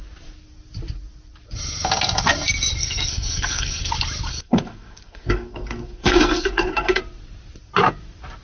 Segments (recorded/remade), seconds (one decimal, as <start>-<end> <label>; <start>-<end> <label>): 0.0-2.8 recorded; 2.8-3.9 remade; 3.9-4.3 recorded; 4.3-7.0 remade; 7.0-8.4 recorded